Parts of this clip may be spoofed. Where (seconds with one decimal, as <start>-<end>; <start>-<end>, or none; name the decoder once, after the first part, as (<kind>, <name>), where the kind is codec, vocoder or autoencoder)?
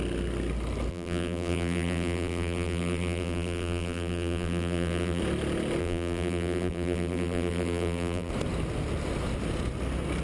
0.9-5.2 (vocoder, BigVGAN v2); 5.8-8.3